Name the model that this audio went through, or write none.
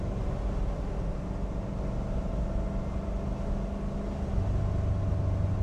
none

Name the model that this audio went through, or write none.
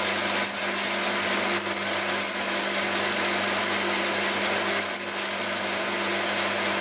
none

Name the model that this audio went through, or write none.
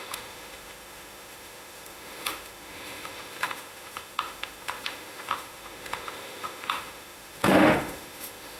autoencoder, DAC-VAE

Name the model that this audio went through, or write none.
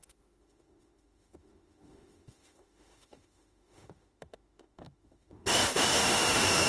autoencoder, DAC-VAE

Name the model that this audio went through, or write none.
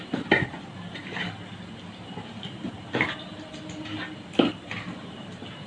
none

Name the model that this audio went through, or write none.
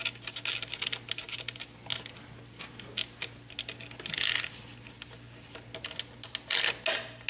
none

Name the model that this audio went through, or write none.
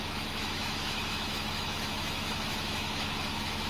autoencoder, DAC-VAE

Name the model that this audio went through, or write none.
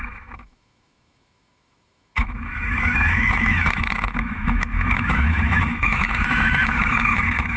autoencoder, DAC-VAE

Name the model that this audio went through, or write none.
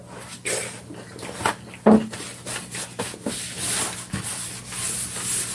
none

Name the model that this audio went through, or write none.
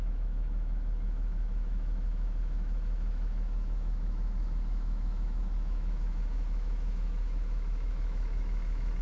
autoencoder, DAC-VAE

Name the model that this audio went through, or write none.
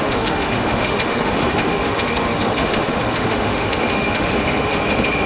autoencoder, DAC-VAE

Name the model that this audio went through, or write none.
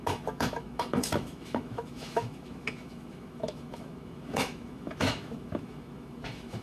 autoencoder, DAC-VAE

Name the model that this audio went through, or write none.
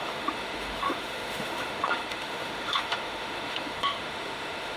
autoencoder, DAC-VAE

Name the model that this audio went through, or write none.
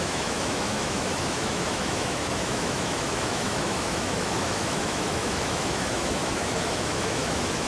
autoencoder, DAC-VAE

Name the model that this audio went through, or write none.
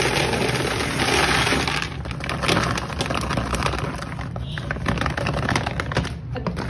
none